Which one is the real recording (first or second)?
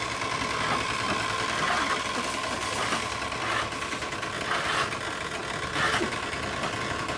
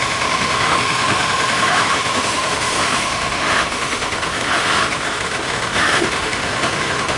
first